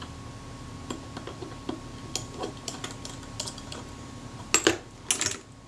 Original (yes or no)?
yes